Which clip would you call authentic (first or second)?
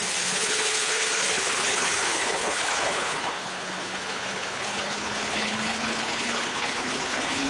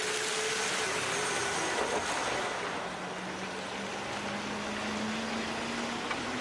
second